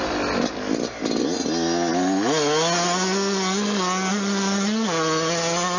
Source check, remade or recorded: recorded